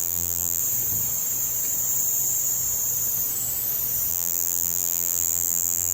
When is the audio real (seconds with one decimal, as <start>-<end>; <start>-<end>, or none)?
0.6-4.1